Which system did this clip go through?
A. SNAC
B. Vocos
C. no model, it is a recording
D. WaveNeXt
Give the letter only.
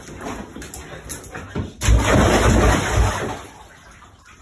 C